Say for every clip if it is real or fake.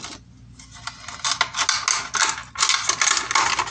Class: real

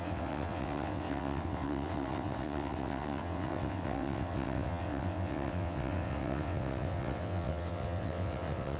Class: fake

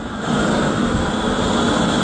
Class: real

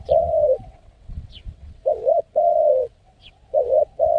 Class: fake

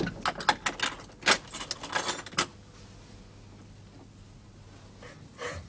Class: real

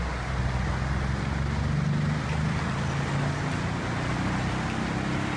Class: real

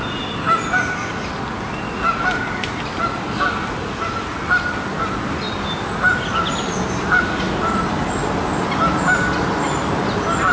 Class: real